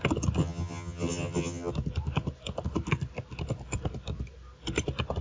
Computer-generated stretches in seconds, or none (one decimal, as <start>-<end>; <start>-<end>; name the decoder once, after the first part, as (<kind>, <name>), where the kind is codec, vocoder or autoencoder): 0.4-1.7 (vocoder, HiFi-GAN)